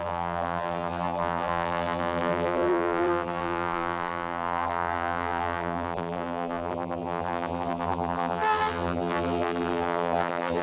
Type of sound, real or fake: fake